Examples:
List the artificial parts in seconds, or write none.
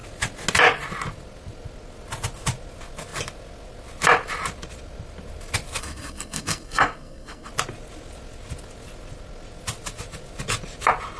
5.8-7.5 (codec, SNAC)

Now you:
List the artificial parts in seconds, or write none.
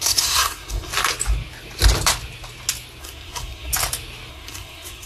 0.0-0.9 (codec, SNAC); 3.0-3.7; 4.3-5.1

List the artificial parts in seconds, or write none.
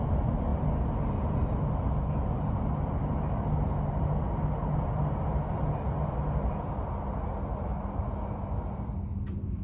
none